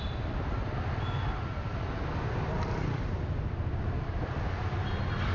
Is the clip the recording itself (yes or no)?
yes